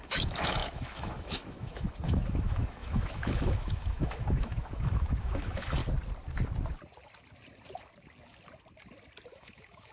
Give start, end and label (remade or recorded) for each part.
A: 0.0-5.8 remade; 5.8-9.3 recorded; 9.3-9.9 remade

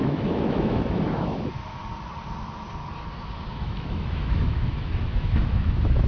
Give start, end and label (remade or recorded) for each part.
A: 0.0-1.8 remade; 1.8-3.5 recorded; 3.5-6.1 remade

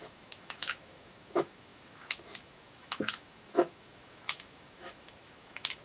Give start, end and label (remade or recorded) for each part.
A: 0.0-5.8 remade

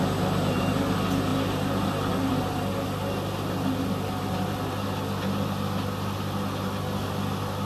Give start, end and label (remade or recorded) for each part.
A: 0.0-7.7 recorded